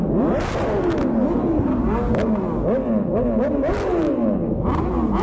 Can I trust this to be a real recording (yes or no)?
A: yes